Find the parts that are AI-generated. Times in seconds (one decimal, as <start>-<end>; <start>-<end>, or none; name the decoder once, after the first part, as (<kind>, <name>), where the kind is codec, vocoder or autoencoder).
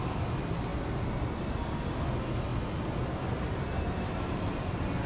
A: none